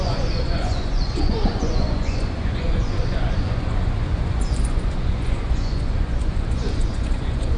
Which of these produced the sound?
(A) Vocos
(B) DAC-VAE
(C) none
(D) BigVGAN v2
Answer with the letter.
A